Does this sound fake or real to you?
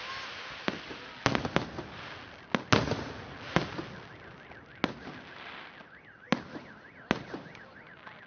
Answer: real